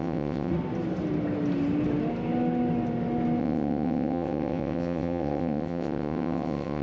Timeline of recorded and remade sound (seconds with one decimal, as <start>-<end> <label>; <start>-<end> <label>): 0.0-0.5 remade; 0.5-3.4 recorded; 3.4-6.8 remade